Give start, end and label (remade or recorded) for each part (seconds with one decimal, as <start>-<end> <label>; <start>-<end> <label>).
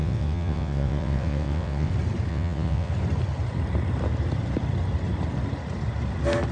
0.0-1.9 remade; 1.9-2.3 recorded; 2.3-2.9 remade; 2.9-6.5 recorded